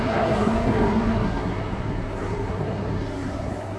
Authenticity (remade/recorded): remade